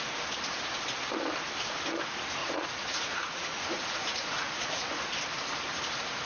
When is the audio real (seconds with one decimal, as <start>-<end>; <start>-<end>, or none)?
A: 0.0-2.4; 4.9-6.3